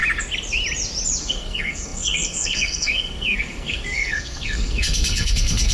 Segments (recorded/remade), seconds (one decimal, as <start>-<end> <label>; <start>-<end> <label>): 0.0-1.2 recorded; 1.2-5.7 remade